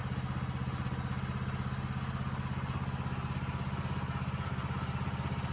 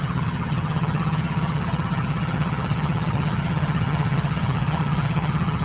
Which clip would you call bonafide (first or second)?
first